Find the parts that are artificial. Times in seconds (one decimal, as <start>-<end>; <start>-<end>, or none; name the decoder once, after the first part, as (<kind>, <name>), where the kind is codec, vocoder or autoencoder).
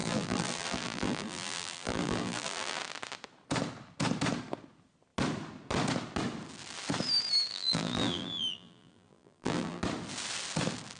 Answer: 0.0-2.8 (vocoder, BigVGAN v2); 7.5-9.8